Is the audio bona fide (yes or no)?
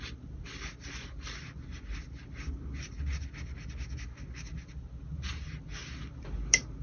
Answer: yes